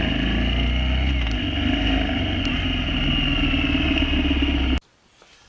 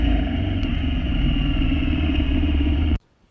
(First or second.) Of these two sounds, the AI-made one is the second